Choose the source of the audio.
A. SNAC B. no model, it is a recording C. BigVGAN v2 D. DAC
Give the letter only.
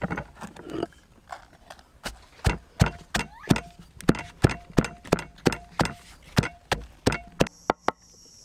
B